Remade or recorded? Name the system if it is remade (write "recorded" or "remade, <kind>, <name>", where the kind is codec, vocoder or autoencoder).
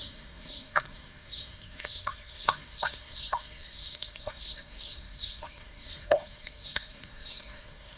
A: remade, codec, SNAC